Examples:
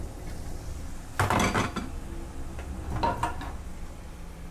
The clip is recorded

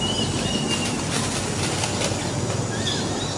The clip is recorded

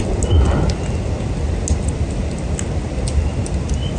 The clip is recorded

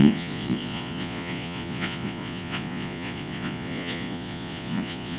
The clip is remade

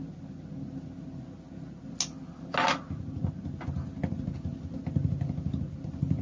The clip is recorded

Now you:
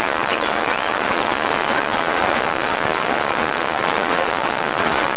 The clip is remade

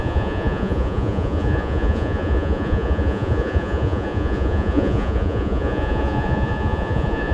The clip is remade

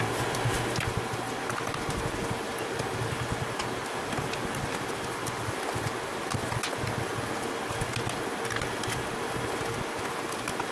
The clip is recorded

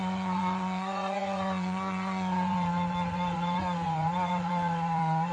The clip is remade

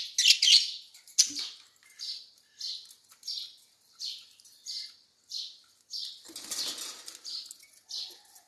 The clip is recorded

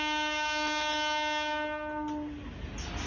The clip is recorded